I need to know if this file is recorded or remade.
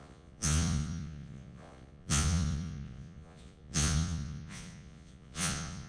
remade